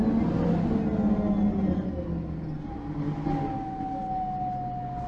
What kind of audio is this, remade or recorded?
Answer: recorded